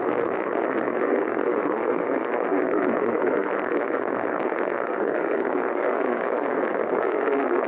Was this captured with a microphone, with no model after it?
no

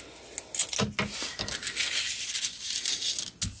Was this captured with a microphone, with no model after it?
yes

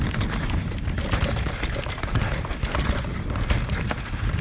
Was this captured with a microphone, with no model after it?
yes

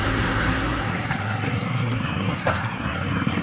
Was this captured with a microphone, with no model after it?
no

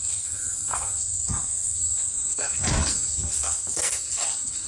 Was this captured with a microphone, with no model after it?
no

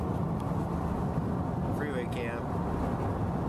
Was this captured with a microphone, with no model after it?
yes